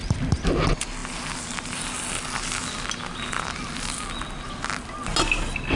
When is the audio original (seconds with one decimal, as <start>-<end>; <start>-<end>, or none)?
0.0-5.8